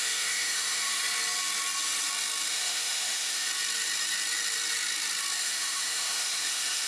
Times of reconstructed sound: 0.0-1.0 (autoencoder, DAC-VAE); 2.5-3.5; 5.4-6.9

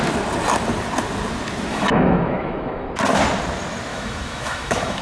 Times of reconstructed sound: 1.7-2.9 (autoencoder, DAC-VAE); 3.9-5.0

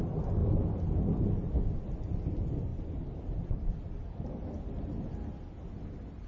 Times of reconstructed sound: none

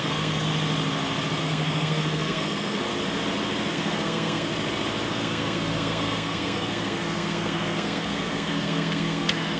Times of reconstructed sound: 0.0-0.5 (codec, SNAC); 1.4-2.9; 3.7-4.5; 5.1-9.6